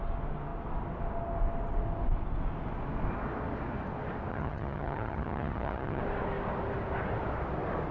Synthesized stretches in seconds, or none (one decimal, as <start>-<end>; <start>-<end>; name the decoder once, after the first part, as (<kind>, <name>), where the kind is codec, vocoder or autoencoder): 4.3-6.0 (vocoder, HiFi-GAN)